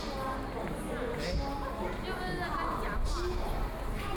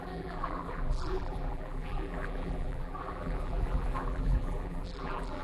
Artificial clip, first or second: second